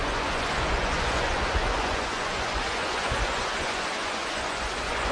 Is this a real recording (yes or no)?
no